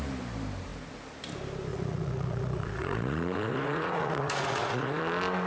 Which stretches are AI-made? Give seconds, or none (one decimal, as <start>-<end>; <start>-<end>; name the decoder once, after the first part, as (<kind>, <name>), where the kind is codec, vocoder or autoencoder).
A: 1.7-5.0 (vocoder, Vocos)